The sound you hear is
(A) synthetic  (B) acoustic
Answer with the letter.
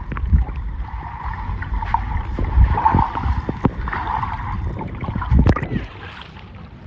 B